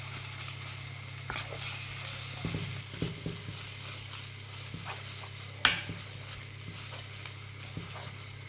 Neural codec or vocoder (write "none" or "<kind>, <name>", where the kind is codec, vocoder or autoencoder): none